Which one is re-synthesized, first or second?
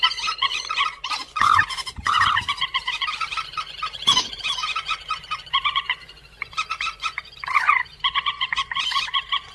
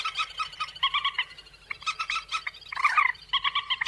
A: first